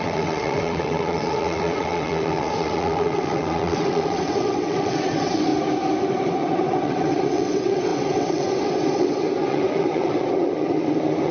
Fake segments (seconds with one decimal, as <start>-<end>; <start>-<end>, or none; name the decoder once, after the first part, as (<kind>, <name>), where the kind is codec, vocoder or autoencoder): 0.0-5.5 (vocoder, WaveNeXt); 6.1-11.3